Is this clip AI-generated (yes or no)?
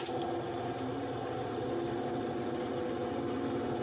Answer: no